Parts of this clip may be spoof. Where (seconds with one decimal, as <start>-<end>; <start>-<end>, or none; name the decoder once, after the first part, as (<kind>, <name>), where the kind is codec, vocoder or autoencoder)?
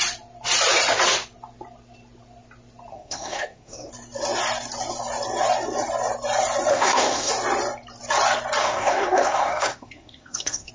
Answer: 2.9-3.9 (codec, SNAC); 6.7-7.3; 8.6-10.7